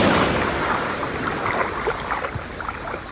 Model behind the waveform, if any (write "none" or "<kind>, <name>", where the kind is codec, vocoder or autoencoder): none